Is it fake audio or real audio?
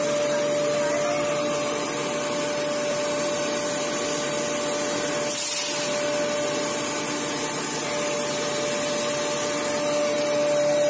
real